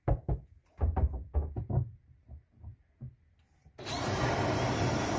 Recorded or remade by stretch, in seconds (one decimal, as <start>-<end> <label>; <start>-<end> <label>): 0.0-2.7 remade; 2.7-4.0 recorded; 4.0-5.2 remade